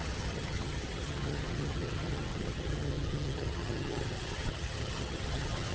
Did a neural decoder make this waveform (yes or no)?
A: yes